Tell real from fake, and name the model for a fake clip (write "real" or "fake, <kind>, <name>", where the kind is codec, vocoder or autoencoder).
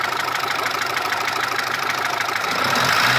real